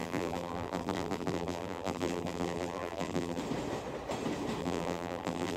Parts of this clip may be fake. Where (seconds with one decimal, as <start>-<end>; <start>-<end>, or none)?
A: 0.0-3.4; 4.6-5.6